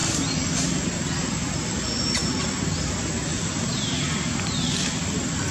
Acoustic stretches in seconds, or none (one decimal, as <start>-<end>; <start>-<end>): 0.0-3.3; 3.8-5.5